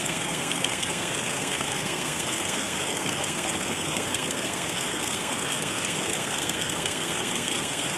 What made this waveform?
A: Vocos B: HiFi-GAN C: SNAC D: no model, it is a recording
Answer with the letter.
C